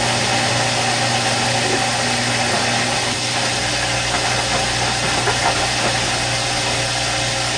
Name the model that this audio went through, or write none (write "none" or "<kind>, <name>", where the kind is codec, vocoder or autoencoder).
none